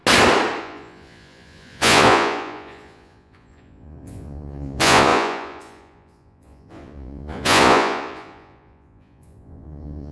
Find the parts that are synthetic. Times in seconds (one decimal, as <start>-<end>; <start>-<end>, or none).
0.6-10.1